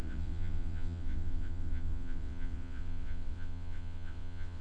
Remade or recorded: remade